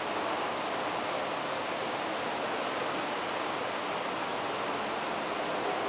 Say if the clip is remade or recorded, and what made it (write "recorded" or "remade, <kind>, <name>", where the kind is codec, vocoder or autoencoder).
recorded